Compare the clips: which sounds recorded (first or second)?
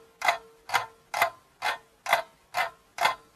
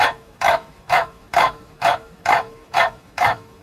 first